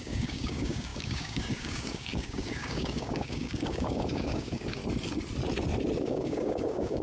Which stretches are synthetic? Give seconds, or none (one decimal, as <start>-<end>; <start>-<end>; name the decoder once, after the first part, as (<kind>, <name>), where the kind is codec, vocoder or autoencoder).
0.0-4.8 (codec, DAC); 6.0-7.0